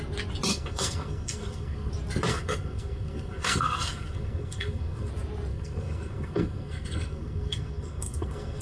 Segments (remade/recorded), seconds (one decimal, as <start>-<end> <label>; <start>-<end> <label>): 0.0-0.5 recorded; 0.5-1.9 remade; 1.9-2.3 recorded; 2.3-5.1 remade; 5.1-5.5 recorded; 5.5-8.6 remade